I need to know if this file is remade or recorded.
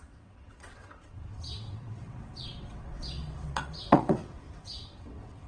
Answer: remade